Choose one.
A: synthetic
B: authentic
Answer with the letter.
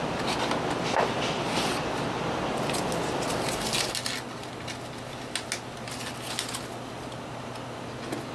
B